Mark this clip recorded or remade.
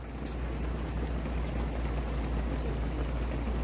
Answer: recorded